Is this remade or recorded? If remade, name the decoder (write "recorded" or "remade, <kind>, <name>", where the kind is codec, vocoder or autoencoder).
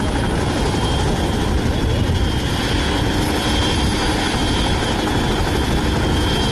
recorded